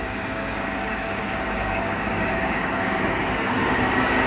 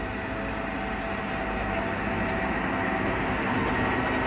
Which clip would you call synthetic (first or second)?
first